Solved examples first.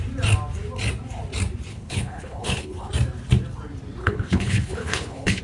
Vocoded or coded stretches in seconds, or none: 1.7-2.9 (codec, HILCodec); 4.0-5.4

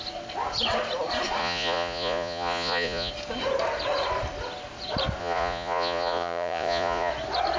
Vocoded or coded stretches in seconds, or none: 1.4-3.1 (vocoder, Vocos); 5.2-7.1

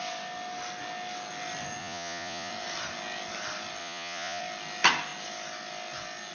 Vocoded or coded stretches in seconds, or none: 1.8-2.5 (vocoder, Vocos); 3.8-4.4

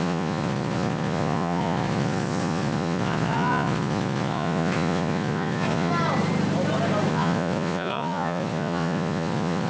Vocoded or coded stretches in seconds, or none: 0.0-5.9 (vocoder, Vocos); 7.1-9.7

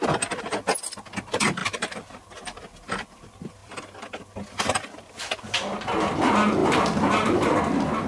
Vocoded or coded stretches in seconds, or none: 1.6-2.3 (vocoder, BigVGAN v2); 6.6-7.6

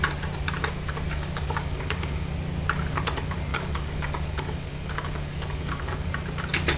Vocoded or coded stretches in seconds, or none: 1.1-2.3 (codec, DAC); 3.5-6.1

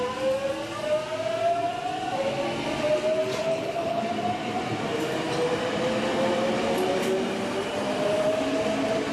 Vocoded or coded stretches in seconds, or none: 3.4-4.0 (codec, HILCodec)

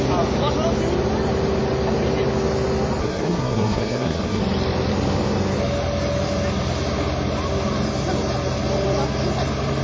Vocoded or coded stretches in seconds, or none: 3.0-4.4 (codec, SNAC)